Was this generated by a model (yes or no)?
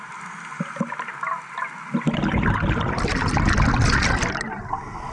no